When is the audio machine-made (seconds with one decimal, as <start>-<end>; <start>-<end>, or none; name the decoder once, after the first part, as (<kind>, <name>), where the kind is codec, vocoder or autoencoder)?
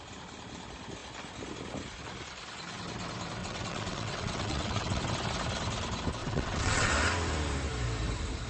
3.4-5.0 (vocoder, WaveNeXt); 6.2-6.9